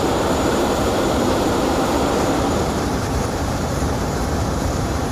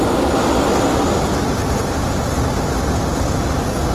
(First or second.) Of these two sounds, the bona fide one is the second